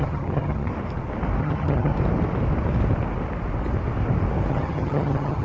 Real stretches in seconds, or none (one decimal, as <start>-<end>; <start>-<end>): 0.7-1.4; 1.9-4.5